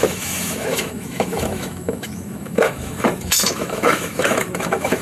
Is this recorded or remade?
remade